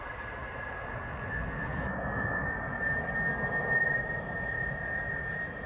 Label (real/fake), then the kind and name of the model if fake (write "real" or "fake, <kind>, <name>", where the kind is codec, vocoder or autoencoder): real